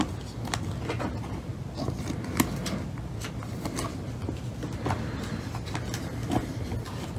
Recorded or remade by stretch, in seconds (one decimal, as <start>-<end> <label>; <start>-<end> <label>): 0.0-7.2 recorded